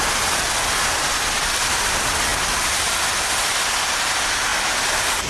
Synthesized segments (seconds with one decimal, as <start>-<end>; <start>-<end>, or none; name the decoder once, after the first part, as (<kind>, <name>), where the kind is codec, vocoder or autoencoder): 4.5-5.3 (vocoder, BigVGAN v2)